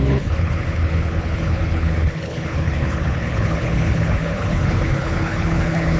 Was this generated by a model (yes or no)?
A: yes